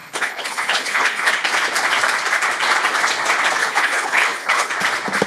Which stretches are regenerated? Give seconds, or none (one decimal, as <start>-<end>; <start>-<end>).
0.0-1.3; 3.6-4.7